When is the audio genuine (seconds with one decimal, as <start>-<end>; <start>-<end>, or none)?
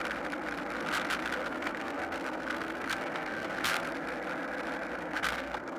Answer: 0.0-1.4; 3.9-4.9